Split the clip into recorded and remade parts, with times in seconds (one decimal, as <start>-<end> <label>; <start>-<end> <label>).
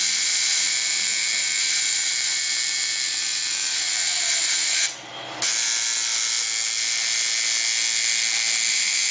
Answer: 0.0-5.5 remade; 5.5-8.7 recorded; 8.7-9.1 remade